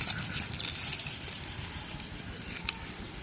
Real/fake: real